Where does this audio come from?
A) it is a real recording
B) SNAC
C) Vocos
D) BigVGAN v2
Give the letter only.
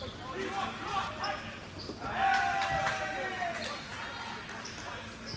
A